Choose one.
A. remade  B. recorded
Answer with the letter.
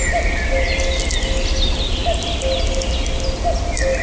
B